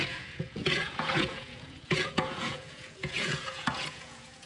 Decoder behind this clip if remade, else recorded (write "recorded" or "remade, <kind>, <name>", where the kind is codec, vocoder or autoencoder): remade, vocoder, Vocos